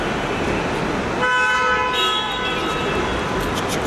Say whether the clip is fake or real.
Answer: real